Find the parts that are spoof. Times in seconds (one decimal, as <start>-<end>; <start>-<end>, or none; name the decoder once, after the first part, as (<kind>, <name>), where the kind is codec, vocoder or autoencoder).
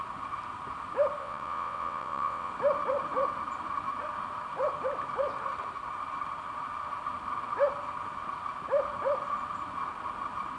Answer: 1.2-2.5 (vocoder, WaveNeXt)